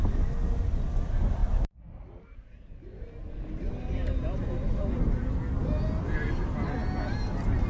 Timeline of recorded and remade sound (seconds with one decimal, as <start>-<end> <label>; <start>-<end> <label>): 0.0-7.7 recorded